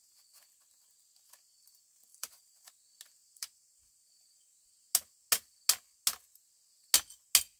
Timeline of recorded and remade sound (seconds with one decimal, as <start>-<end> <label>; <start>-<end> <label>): 0.0-2.1 recorded; 2.1-2.7 remade; 2.7-3.2 recorded; 3.2-4.6 remade; 4.6-7.6 recorded